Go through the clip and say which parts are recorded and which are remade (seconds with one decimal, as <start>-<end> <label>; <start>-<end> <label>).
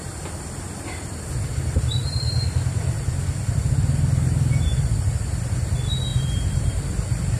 0.0-6.1 recorded; 6.1-6.9 remade; 6.9-7.4 recorded